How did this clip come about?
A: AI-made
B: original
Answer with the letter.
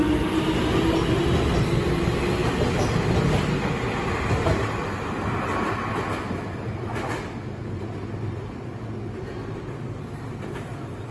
B